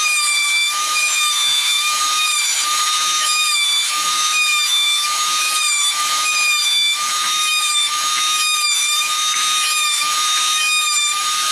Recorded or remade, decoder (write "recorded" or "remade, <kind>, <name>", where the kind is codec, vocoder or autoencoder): remade, autoencoder, DAC-VAE